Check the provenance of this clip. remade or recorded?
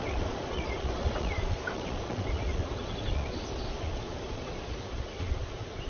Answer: remade